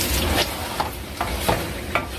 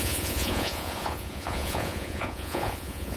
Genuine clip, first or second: first